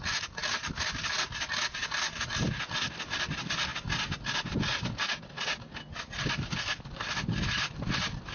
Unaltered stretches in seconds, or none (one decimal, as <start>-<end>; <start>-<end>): 0.0-8.3